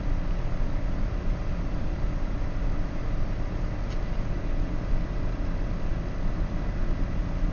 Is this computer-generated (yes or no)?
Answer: no